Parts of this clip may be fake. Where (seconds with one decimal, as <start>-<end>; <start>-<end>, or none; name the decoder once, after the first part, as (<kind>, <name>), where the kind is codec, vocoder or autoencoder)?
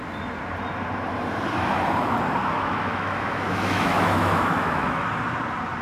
2.4-5.1 (autoencoder, DAC-VAE)